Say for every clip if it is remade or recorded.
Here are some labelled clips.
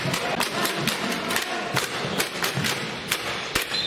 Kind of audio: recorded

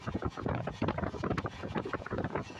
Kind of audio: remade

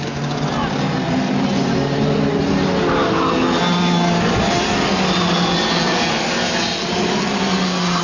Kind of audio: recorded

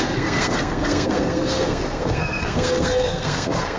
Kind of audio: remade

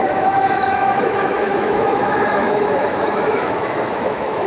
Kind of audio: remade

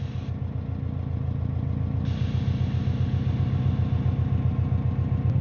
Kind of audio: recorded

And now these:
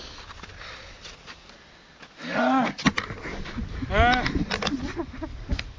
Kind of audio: recorded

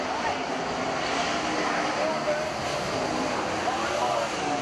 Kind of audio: recorded